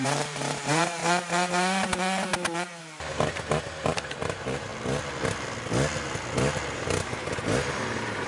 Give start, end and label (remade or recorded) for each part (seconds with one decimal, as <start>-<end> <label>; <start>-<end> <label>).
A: 0.0-1.0 remade; 1.0-1.5 recorded; 1.5-2.3 remade; 2.3-2.8 recorded; 2.8-4.7 remade; 4.7-6.7 recorded; 6.7-8.3 remade